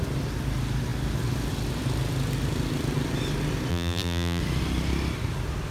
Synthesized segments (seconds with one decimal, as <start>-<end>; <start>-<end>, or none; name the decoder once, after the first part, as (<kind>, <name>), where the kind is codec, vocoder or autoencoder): 3.7-4.4 (vocoder, BigVGAN v2)